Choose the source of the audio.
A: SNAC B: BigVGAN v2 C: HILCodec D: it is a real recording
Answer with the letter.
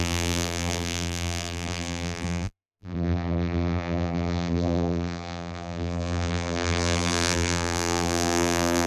B